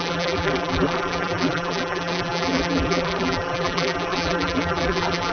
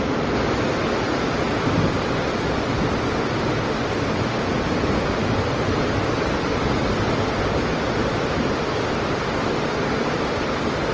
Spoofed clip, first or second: first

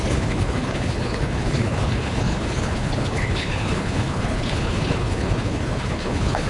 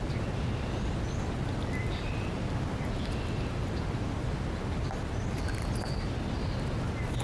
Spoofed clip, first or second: first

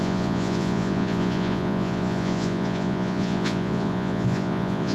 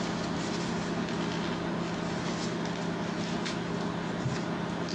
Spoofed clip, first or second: first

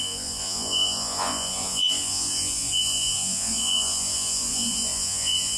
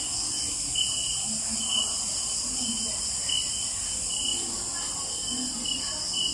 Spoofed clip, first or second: first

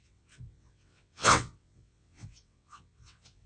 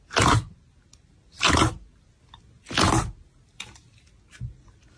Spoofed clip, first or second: first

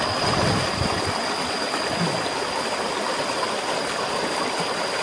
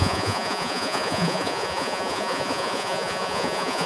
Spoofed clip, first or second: second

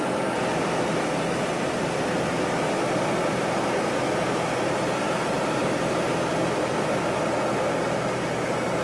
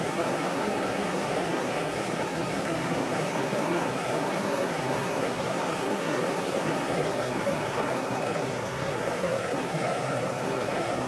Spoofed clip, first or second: second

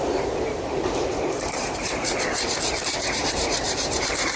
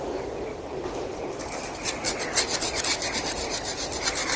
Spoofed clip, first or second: first